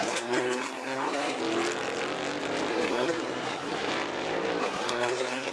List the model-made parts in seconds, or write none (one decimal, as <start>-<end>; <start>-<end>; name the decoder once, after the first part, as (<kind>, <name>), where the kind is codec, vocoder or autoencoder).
0.0-1.4 (codec, SNAC); 2.7-3.9; 4.6-5.5